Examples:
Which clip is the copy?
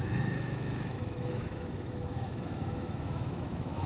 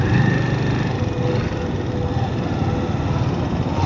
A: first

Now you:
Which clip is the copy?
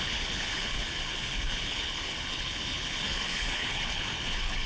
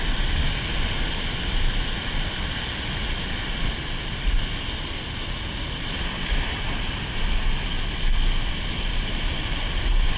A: first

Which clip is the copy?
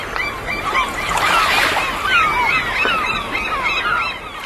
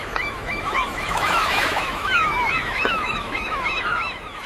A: second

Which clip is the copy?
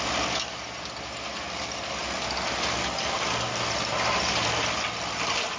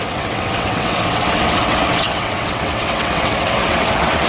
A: second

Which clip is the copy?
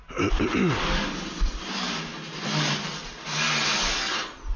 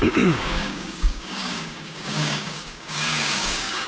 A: second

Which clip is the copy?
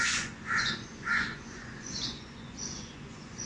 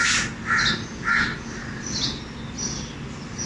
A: first